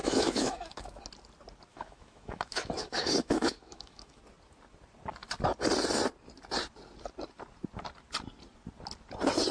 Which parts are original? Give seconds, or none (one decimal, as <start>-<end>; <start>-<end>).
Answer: 1.0-1.7; 4.2-9.5